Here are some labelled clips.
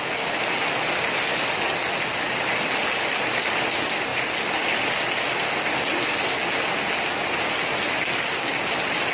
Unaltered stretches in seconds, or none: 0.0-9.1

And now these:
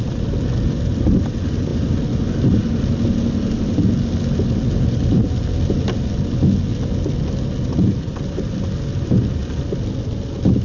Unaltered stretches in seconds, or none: 0.0-10.6

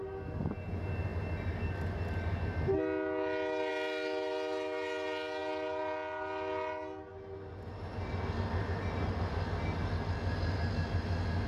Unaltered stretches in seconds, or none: 0.0-11.5

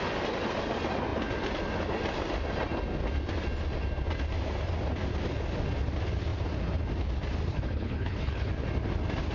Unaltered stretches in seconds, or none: 0.0-7.5; 8.5-9.3

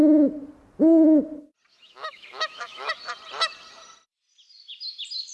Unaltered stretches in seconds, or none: 0.0-1.7; 2.9-5.3

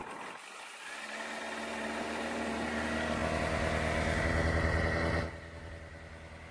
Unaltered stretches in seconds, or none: 0.0-6.5

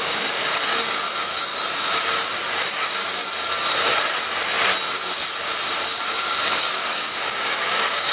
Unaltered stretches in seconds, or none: 1.5-2.8; 3.2-5.9

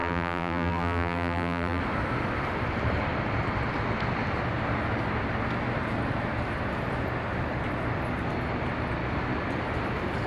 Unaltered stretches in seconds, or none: 1.8-10.3